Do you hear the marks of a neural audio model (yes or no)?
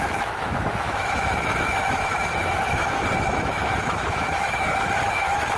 yes